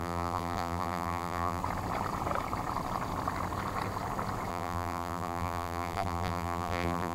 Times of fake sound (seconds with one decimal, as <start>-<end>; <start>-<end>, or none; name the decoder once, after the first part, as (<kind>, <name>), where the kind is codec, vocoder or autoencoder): 0.0-1.6 (vocoder, BigVGAN v2); 4.5-7.1